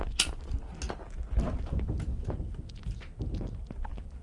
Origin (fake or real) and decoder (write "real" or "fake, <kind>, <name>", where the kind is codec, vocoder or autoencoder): real